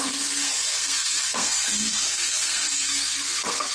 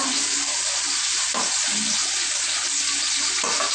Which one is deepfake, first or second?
first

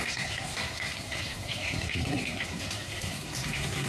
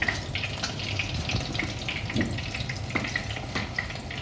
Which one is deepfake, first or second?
first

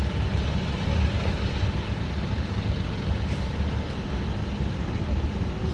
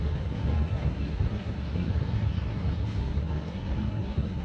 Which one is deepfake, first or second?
second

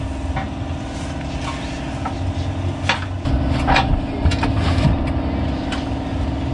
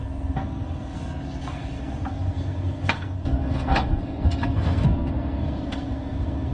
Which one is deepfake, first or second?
second